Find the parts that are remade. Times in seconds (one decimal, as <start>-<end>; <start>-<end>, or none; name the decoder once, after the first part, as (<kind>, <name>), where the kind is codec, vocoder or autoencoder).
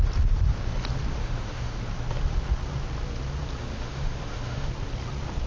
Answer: 1.2-1.8 (autoencoder, DAC-VAE); 3.6-4.7